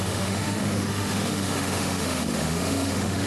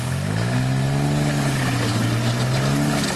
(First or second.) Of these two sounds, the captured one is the second